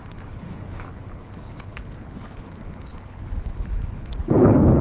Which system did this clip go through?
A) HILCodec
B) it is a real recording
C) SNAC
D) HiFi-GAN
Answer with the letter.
A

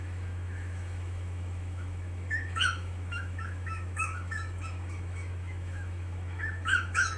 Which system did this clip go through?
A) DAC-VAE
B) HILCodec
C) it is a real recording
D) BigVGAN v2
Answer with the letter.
A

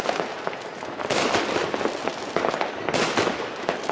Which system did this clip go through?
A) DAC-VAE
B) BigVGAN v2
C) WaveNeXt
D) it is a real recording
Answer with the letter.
D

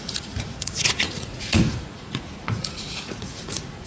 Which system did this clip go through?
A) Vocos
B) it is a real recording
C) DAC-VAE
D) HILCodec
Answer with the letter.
A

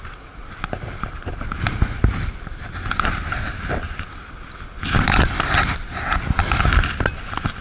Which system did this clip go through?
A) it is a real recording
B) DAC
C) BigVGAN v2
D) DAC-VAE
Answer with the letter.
A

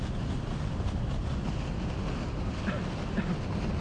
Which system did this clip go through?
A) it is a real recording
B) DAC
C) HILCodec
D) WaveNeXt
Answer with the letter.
A